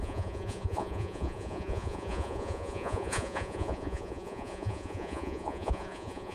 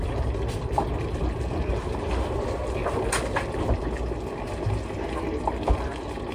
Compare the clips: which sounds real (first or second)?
second